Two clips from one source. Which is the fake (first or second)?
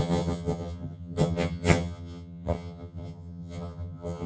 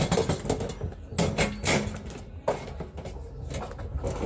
first